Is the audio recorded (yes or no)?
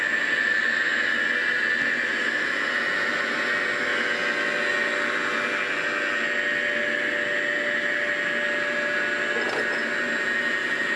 yes